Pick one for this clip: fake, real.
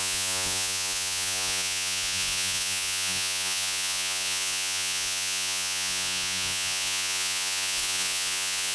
fake